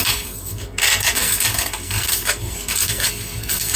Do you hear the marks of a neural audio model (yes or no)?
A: yes